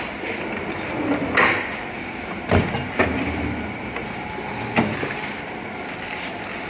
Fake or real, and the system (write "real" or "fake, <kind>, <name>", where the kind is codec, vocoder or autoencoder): real